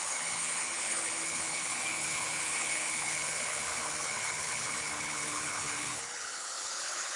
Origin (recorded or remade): remade